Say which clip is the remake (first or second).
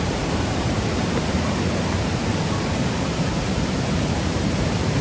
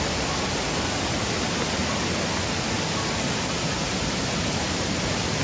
first